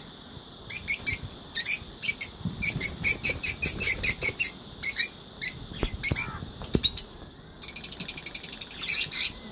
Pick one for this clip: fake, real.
real